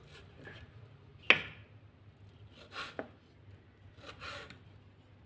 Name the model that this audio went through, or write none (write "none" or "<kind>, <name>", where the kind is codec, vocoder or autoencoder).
none